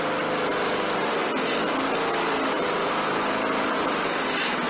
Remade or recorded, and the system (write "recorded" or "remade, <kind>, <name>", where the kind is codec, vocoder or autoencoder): recorded